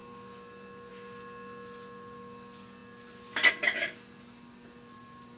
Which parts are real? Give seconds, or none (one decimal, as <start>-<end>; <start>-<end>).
0.0-5.4